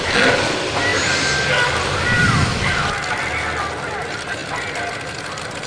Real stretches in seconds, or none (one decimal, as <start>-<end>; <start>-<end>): 0.0-5.7